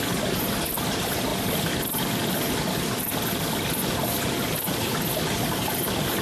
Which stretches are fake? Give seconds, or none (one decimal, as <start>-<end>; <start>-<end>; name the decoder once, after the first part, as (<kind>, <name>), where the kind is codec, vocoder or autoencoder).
none